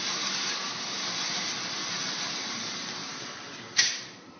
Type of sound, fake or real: real